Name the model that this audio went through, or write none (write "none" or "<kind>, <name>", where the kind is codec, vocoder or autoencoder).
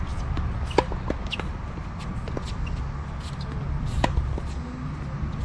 none